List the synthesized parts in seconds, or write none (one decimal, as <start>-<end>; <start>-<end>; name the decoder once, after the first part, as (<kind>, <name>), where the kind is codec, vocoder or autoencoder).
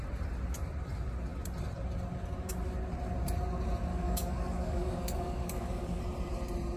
3.9-6.0 (codec, DAC)